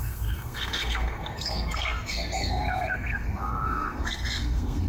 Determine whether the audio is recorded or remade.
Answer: remade